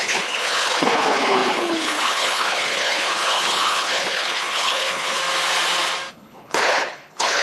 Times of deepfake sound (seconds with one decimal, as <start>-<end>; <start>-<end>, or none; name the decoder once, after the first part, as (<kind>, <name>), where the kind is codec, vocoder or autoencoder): 0.0-5.2 (codec, HILCodec); 6.1-7.4